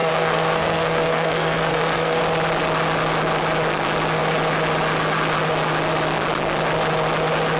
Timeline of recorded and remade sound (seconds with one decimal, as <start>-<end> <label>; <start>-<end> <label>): 0.0-2.2 remade; 2.2-7.6 recorded